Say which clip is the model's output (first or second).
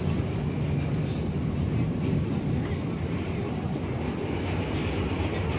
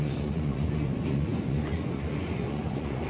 second